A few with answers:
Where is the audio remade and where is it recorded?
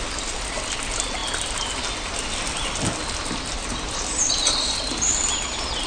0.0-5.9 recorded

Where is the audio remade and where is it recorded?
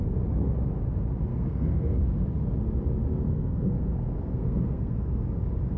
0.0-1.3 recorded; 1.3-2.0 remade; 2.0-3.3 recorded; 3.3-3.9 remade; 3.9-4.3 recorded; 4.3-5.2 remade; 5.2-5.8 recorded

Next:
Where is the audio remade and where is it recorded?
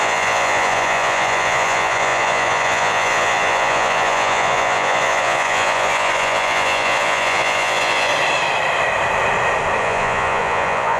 0.0-8.1 remade; 8.1-9.8 recorded; 9.8-11.0 remade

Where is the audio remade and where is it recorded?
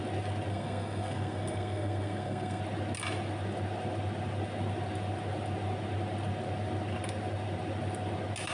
0.0-0.5 recorded; 0.5-2.6 remade; 2.6-8.5 recorded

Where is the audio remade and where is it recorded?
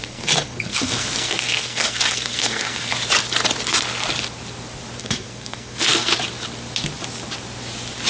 0.0-2.9 remade; 2.9-5.0 recorded; 5.0-6.1 remade; 6.1-8.1 recorded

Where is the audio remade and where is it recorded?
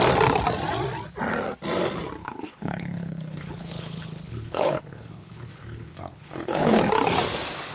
0.0-2.2 recorded; 2.2-6.8 remade; 6.8-7.7 recorded